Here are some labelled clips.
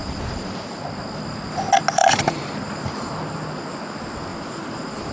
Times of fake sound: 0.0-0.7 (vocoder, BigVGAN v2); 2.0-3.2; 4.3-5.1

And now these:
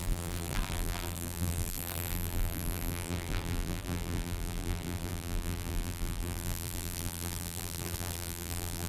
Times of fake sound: 0.0-8.9 (vocoder, BigVGAN v2)

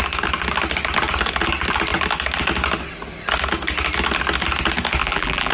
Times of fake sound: 5.0-5.5 (vocoder, BigVGAN v2)